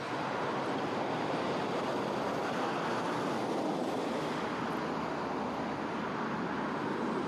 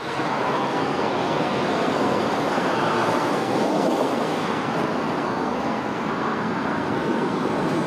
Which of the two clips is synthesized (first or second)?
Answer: second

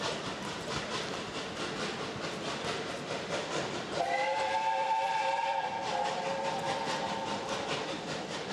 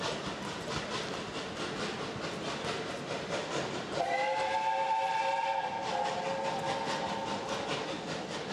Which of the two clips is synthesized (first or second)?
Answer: first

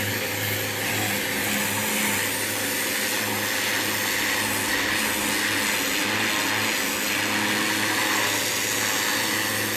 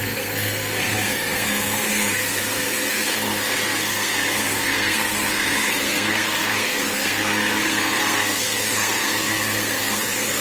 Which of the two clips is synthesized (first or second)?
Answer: second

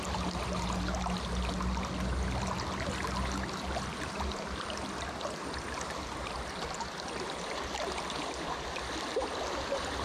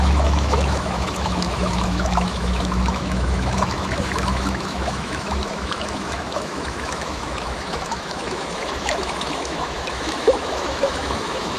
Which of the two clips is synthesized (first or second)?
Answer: second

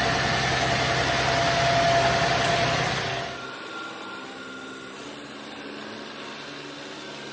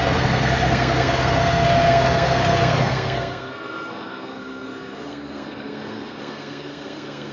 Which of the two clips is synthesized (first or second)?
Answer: second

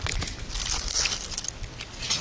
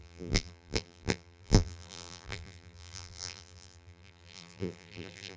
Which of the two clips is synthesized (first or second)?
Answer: second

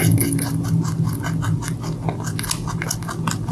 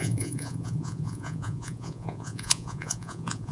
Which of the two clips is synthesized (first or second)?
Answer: second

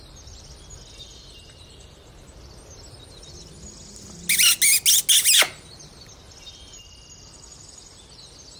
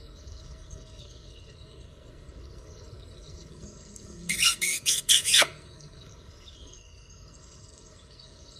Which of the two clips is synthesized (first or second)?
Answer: second